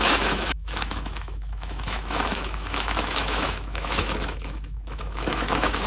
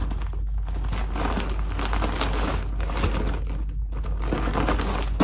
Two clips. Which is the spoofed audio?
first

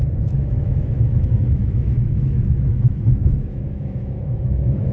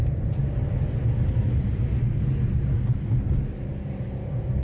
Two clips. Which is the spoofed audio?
first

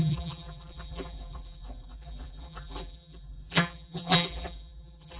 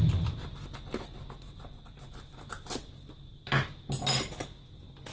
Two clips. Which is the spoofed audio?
first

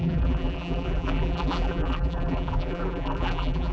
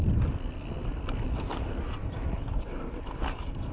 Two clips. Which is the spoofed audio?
first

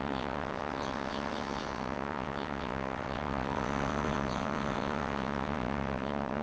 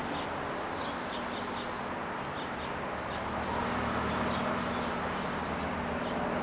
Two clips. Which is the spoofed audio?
first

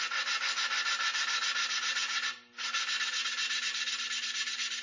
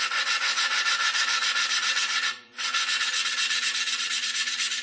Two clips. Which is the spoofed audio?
second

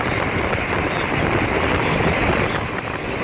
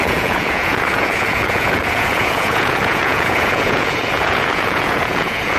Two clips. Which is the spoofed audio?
second